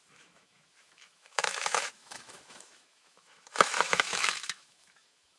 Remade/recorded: remade